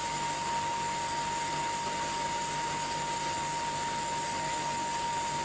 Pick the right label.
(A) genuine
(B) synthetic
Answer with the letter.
A